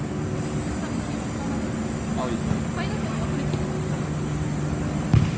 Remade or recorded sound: recorded